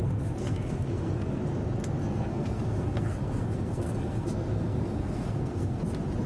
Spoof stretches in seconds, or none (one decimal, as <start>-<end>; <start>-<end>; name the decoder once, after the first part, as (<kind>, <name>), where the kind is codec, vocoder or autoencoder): 0.0-1.4 (codec, SNAC); 2.0-5.8

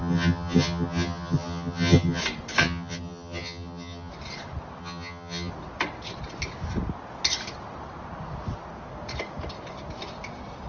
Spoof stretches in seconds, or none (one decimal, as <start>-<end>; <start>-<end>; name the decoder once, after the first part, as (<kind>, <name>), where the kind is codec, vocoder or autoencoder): 0.0-2.2 (vocoder, HiFi-GAN); 2.6-4.1; 4.8-5.5

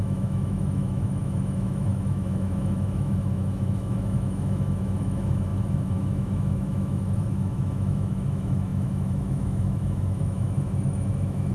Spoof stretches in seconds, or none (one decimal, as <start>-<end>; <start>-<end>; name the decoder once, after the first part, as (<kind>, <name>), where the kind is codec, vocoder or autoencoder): 0.0-11.5 (autoencoder, DAC-VAE)

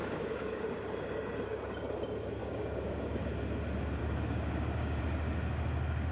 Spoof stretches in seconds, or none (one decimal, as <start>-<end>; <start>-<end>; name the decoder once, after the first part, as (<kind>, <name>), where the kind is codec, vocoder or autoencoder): 0.0-0.6 (codec, DAC); 2.4-3.2; 4.0-5.0

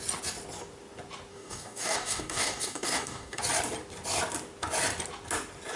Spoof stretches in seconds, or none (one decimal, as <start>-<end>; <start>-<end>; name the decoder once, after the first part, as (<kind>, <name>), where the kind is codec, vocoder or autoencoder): 1.3-3.4 (codec, DAC)

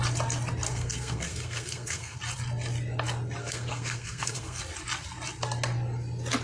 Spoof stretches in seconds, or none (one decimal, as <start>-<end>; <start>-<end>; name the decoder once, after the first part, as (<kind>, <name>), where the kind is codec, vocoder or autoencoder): 0.7-2.2 (codec, SNAC); 3.4-4.6

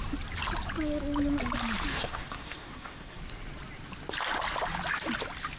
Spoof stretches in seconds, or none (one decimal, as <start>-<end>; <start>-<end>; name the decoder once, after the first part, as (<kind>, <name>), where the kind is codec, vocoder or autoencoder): 1.9-3.2 (codec, SNAC)